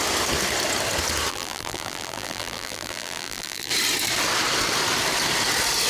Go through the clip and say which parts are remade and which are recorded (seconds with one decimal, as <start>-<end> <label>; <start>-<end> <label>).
0.0-1.3 recorded; 1.3-3.7 remade; 3.7-5.9 recorded